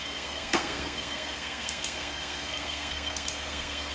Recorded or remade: remade